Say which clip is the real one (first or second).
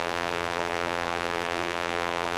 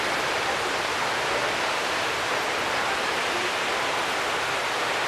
second